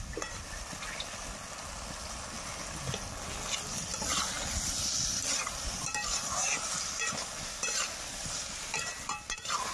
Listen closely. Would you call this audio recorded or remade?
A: recorded